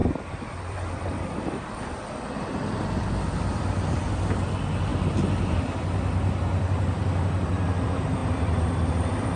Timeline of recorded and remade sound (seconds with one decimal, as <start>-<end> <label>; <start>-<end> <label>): 0.0-9.4 remade